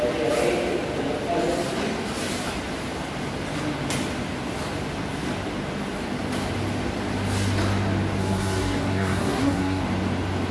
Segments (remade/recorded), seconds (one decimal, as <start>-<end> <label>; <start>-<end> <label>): 0.0-8.2 recorded; 8.2-9.8 remade; 9.8-10.5 recorded